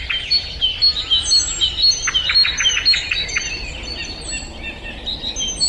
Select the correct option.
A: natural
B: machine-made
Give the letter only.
A